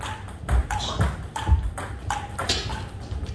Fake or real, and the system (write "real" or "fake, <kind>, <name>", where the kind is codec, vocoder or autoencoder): real